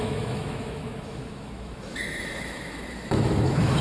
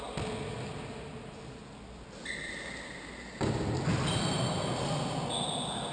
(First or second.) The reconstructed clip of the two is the first